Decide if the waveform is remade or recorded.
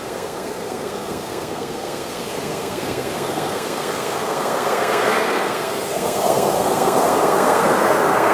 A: remade